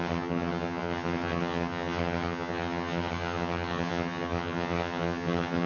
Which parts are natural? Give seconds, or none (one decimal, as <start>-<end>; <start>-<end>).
none